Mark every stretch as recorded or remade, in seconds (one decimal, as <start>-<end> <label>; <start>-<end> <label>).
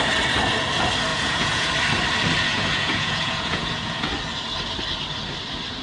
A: 0.0-1.1 recorded; 1.1-1.7 remade; 1.7-2.5 recorded; 2.5-4.1 remade; 4.1-5.8 recorded